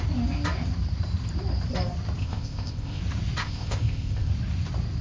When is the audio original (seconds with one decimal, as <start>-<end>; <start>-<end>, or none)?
0.0-2.2; 3.0-3.4; 4.3-5.0